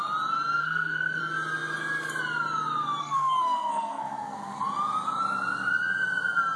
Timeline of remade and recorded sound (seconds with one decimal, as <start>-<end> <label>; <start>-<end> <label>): 0.0-0.6 recorded; 0.6-1.2 remade; 1.2-3.0 recorded; 3.0-4.6 remade; 4.6-6.6 recorded